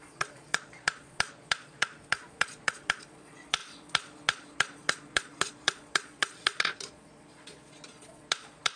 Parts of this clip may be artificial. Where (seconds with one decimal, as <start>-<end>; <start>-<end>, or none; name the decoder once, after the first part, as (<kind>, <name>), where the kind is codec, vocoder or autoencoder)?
0.0-8.8 (vocoder, Vocos)